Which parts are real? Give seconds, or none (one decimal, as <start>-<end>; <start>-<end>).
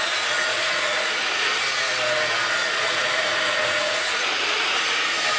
0.0-0.5; 1.5-2.6; 4.8-5.4